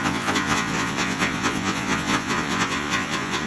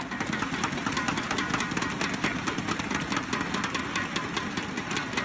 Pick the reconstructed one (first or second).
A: first